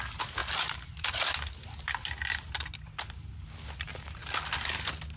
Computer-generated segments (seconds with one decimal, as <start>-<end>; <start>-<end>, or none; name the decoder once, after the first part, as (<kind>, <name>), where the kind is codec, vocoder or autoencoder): none